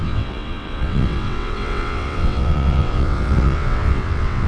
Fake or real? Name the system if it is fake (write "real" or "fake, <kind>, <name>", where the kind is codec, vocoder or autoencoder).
fake, vocoder, WaveNeXt